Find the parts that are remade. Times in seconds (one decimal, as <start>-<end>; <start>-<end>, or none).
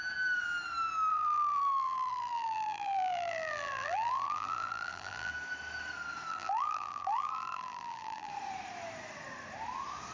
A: 1.1-5.3; 6.3-8.3